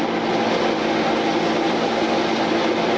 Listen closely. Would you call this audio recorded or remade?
recorded